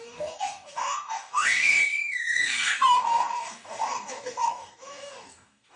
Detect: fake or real fake